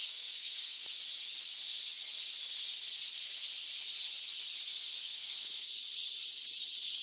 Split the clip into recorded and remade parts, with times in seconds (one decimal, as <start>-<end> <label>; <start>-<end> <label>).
0.0-0.9 remade; 0.9-5.0 recorded; 5.0-5.7 remade; 5.7-7.0 recorded